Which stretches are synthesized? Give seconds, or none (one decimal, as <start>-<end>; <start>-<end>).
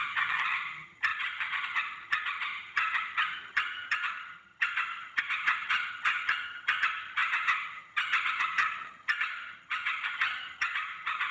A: 0.0-11.3